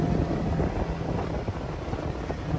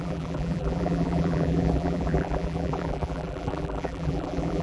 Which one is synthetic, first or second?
second